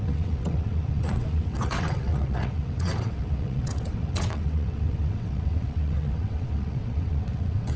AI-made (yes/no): yes